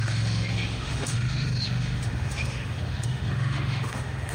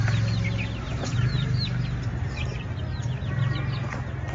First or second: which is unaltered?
second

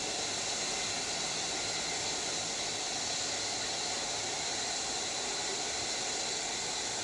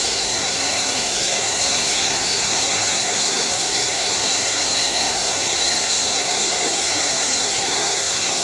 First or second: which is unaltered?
first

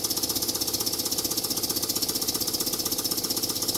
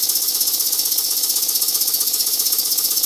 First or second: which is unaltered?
first